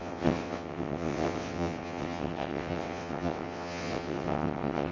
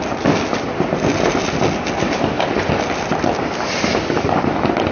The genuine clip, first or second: second